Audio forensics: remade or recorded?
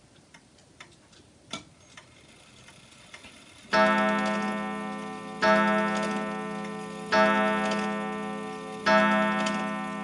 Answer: recorded